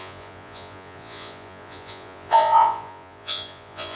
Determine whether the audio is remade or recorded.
remade